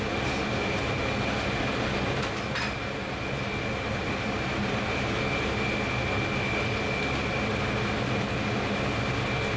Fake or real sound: real